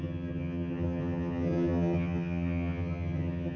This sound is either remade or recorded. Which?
remade